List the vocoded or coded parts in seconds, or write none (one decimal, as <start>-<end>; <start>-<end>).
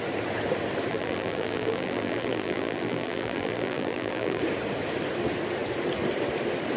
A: 0.9-4.4